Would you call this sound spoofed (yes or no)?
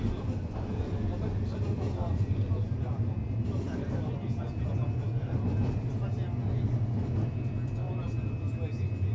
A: no